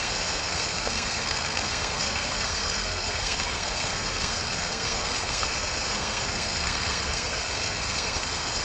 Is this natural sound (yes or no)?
no